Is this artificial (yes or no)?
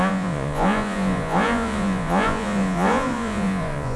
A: yes